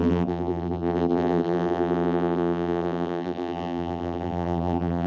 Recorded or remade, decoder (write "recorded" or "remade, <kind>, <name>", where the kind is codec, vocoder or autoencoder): remade, vocoder, BigVGAN v2